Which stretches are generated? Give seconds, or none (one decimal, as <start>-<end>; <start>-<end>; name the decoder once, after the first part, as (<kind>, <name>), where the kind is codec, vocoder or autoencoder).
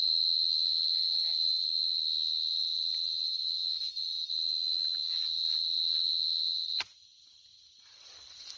0.0-2.0 (vocoder, BigVGAN v2); 2.5-8.6